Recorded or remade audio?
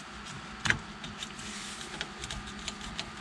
recorded